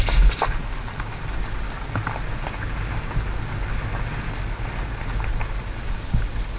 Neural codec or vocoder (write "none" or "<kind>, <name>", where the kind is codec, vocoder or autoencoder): none